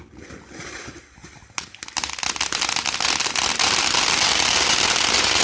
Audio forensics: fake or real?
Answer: real